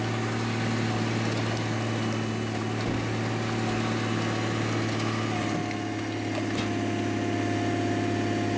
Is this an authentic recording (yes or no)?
yes